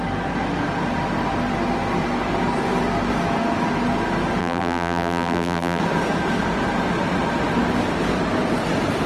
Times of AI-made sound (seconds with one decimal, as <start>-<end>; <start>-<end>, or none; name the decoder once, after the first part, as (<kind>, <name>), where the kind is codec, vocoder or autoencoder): 4.4-5.8 (vocoder, BigVGAN v2)